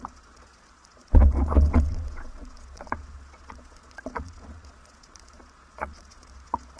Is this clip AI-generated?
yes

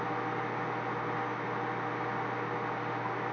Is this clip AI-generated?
no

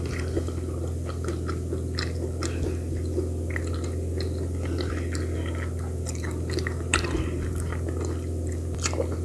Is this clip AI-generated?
no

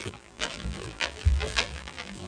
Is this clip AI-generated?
yes